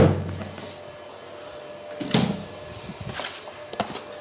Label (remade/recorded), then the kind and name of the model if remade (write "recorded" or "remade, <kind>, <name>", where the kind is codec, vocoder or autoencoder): recorded